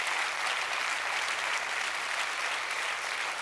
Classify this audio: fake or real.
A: real